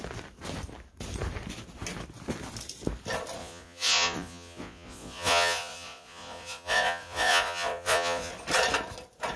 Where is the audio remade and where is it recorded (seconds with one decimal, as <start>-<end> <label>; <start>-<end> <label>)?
0.0-3.4 recorded; 3.4-8.3 remade; 8.3-9.4 recorded